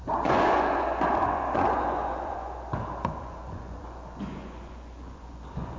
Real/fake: fake